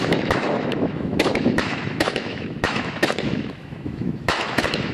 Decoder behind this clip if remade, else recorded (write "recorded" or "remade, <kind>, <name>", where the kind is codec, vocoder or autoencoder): remade, autoencoder, DAC-VAE